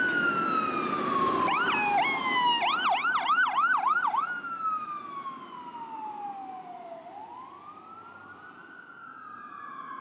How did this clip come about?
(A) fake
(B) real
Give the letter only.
B